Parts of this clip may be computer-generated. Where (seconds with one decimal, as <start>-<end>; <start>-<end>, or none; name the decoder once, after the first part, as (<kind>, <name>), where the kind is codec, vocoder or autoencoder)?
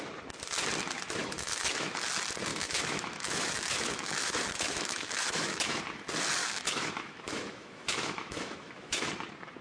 1.2-2.1 (autoencoder, DAC-VAE); 2.5-5.8; 6.4-9.1